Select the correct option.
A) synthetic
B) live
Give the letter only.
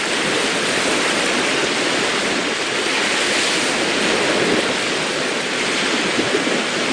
B